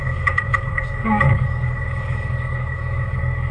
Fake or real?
fake